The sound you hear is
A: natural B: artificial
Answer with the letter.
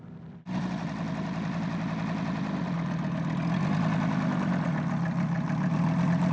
A